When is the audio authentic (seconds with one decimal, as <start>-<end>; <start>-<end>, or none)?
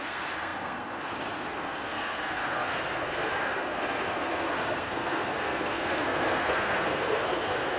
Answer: none